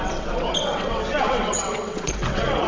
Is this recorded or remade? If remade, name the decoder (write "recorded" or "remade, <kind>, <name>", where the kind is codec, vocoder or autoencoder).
remade, vocoder, WaveNeXt